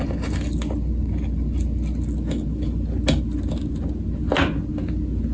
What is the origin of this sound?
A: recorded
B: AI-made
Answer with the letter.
A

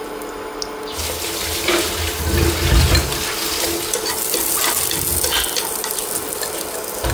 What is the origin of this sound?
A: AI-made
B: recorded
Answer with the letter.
B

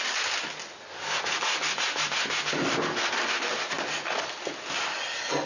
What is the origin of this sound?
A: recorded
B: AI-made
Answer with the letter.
A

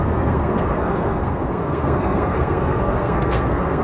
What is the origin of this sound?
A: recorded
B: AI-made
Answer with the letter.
B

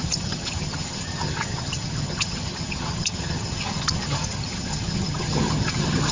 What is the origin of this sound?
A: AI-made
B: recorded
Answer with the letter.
A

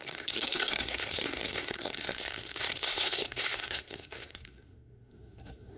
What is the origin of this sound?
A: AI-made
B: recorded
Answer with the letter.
A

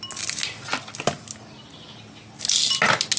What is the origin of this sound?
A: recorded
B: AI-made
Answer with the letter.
A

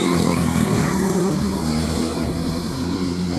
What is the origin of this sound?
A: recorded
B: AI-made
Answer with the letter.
B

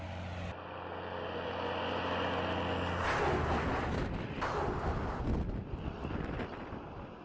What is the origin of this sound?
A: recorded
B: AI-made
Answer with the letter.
A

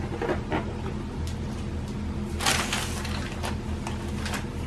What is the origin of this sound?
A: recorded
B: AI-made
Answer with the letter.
A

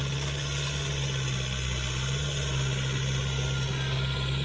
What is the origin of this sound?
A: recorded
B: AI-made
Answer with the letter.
A